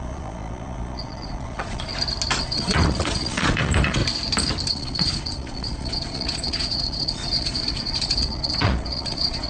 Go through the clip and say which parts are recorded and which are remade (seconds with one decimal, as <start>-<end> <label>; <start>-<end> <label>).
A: 0.0-1.9 remade; 1.9-2.4 recorded; 2.4-4.0 remade; 4.0-4.7 recorded; 4.7-9.5 remade